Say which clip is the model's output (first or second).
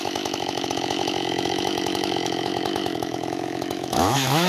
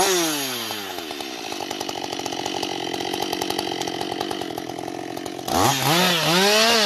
first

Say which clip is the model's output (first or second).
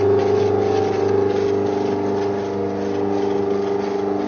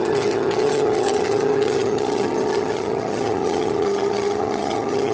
second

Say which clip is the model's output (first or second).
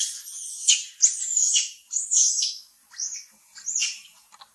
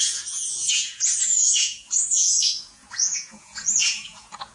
second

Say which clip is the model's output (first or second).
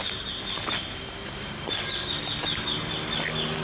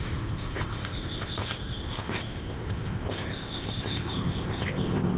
second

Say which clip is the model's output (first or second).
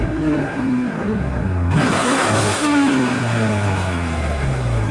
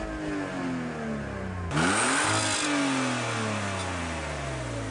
first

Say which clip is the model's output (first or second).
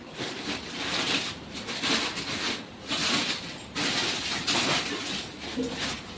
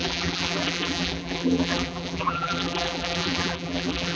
second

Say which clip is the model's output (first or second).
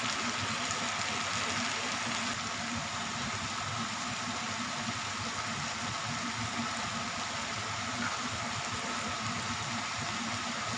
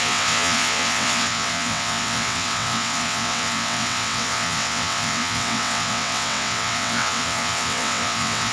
second